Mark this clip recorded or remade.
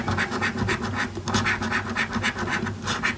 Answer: recorded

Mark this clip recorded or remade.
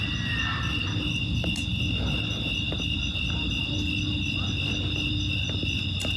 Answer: recorded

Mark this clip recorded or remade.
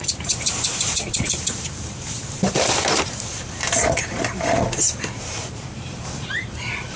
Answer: remade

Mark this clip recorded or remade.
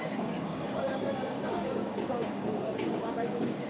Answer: remade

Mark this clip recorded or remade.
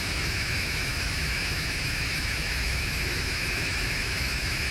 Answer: remade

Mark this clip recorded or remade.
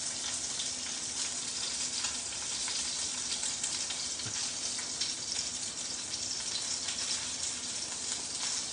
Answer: recorded